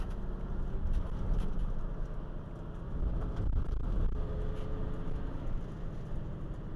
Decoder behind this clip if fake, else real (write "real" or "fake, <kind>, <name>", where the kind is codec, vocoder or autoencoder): real